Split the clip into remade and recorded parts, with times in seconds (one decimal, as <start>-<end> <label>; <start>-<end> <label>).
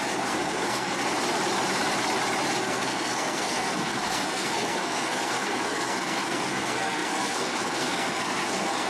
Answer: 0.0-1.0 remade; 1.0-2.6 recorded; 2.6-8.9 remade